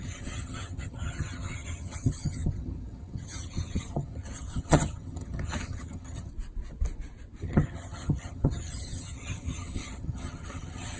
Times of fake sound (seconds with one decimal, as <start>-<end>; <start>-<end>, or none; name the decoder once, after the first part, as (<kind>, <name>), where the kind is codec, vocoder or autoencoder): 0.0-6.3 (vocoder, HiFi-GAN); 7.4-11.0